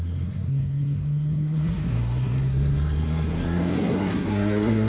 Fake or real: fake